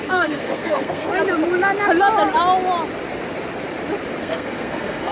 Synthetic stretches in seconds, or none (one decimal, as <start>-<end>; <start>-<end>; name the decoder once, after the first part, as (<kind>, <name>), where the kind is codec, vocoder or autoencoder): 0.0-1.1 (codec, SNAC); 4.2-5.1